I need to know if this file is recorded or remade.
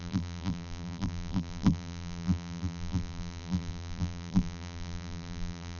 remade